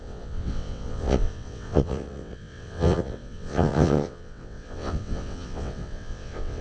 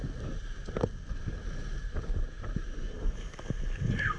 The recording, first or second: second